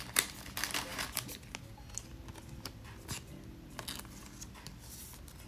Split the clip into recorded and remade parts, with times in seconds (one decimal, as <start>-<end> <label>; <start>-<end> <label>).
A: 0.0-5.5 recorded